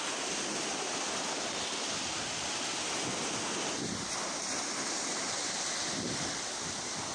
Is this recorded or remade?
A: recorded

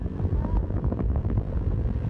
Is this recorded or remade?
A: remade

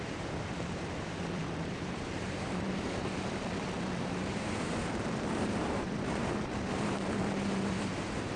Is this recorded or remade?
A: remade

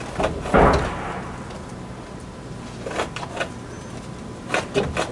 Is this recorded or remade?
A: recorded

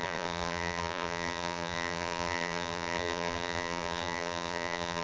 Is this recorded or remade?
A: remade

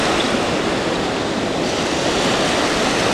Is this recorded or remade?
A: recorded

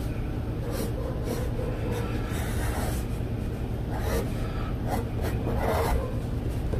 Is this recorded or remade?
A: recorded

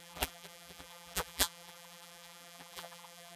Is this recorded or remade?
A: remade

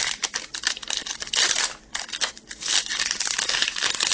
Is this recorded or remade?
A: remade